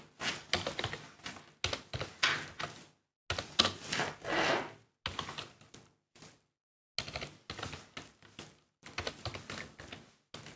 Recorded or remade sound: recorded